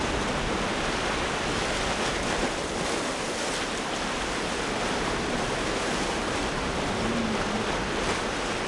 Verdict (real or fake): real